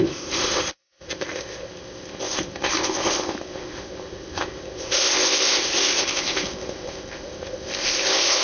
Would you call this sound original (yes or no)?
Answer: no